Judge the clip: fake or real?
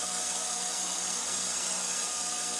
fake